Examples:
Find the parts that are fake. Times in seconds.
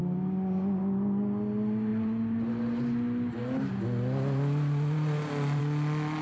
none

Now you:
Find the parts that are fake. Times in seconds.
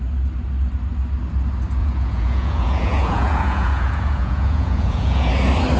1.8-5.3 (vocoder, Vocos)